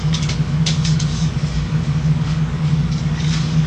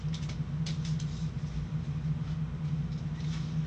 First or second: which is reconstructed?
first